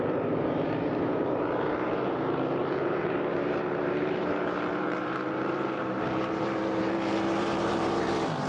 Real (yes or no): no